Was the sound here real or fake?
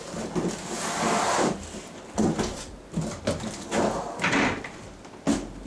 real